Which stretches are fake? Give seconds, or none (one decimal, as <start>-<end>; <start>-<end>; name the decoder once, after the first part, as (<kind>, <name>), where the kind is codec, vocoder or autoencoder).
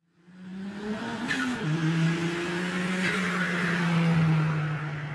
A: none